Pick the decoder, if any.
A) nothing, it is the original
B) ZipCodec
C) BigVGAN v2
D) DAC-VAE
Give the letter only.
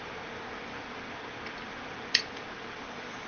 A